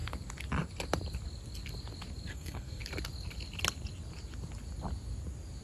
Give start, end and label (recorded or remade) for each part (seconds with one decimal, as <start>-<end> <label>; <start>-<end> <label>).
0.0-2.3 recorded; 2.3-2.8 remade; 2.8-5.6 recorded